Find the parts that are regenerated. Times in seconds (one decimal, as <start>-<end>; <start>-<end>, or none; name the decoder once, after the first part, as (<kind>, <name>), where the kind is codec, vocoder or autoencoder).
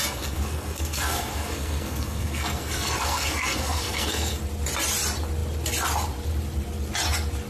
0.0-4.4 (codec, SNAC)